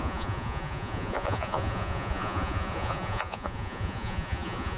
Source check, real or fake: fake